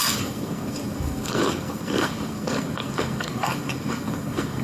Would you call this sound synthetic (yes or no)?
yes